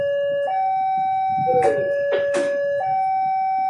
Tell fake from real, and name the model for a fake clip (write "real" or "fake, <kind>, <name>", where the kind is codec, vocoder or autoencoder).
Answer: real